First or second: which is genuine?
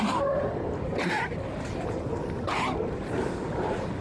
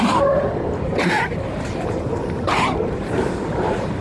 first